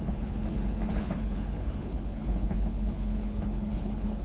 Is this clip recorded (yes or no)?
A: no